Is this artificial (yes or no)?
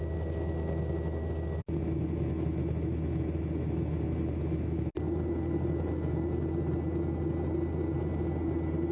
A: no